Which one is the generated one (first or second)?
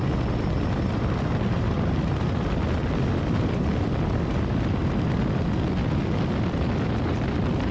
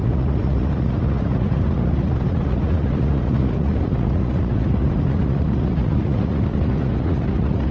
second